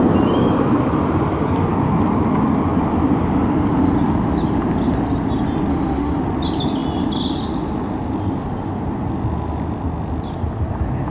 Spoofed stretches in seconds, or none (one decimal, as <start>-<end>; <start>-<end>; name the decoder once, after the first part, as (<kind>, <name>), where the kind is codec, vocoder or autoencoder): 5.7-6.2 (autoencoder, DAC-VAE)